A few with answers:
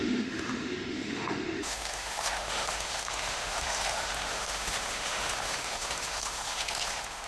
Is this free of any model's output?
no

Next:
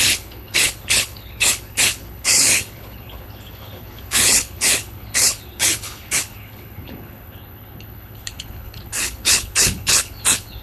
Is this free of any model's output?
no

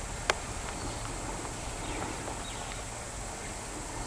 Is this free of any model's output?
yes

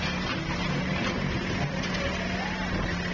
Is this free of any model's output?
yes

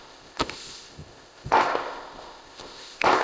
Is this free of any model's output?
no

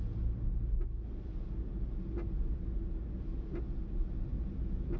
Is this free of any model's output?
yes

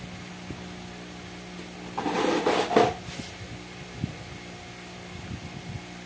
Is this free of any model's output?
yes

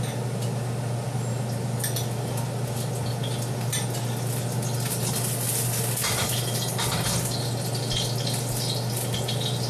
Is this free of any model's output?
yes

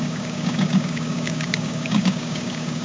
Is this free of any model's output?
no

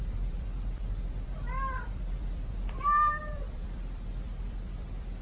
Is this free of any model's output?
no